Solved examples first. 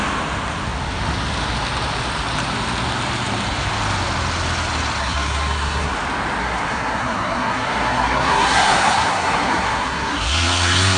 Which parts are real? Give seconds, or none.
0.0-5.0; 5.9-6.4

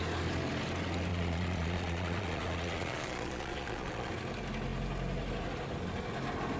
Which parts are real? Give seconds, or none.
0.0-1.1; 4.1-6.6

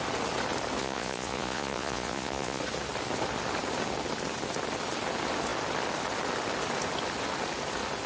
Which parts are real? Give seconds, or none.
0.0-0.8; 2.6-8.1

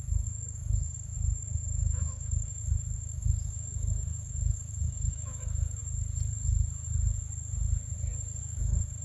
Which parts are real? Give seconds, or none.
5.8-8.4

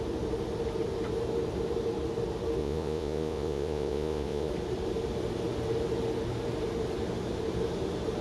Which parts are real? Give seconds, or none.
0.0-2.6; 4.5-8.2

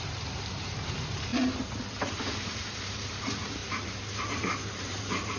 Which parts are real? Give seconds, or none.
none

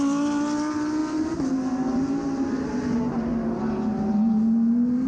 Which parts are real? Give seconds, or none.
0.0-5.1

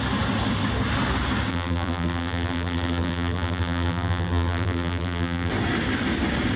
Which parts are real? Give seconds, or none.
0.0-1.5; 5.5-6.6